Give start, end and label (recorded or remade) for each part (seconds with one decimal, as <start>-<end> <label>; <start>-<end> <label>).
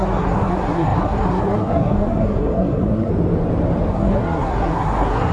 0.0-3.1 remade; 3.1-3.9 recorded; 3.9-5.3 remade